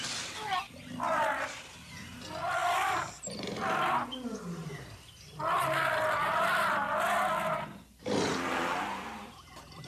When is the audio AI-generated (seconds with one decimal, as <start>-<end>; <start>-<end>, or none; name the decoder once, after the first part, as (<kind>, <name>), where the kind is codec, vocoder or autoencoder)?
2.6-3.3 (vocoder, BigVGAN v2); 4.6-6.9